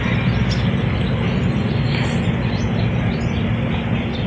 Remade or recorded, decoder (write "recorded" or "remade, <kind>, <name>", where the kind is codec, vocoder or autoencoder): recorded